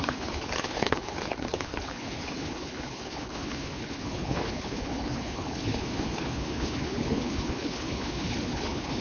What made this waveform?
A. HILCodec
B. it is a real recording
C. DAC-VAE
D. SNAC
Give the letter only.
A